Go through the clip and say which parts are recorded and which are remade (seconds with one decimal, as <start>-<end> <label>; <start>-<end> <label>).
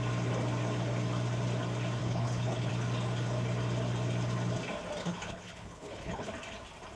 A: 0.0-2.0 recorded; 2.0-2.7 remade; 2.7-5.0 recorded; 5.0-6.3 remade; 6.3-7.0 recorded